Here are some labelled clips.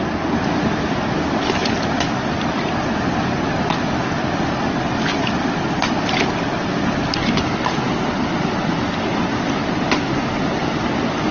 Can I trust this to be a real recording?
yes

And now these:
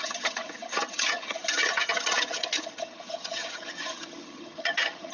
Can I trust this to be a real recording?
no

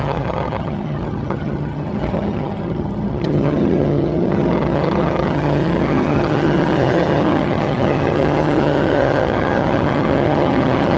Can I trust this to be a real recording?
no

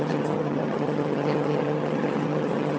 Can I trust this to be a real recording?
no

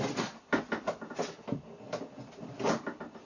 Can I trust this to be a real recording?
yes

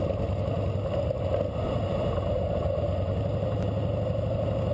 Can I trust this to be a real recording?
yes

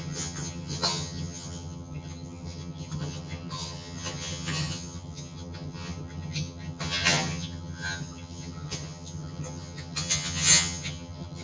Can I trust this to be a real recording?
no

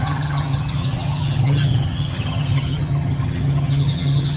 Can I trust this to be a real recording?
no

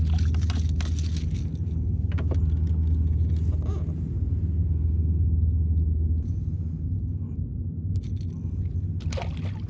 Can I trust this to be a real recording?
yes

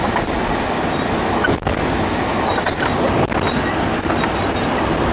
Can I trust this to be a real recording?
yes